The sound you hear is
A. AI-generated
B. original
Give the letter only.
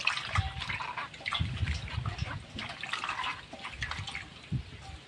B